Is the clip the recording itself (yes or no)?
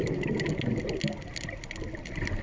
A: yes